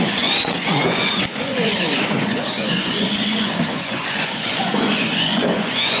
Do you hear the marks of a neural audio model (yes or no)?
yes